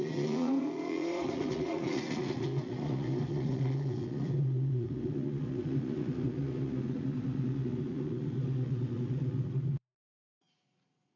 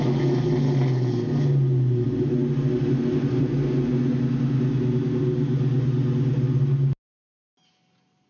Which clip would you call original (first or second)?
second